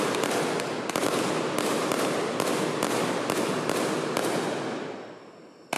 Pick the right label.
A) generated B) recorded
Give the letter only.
B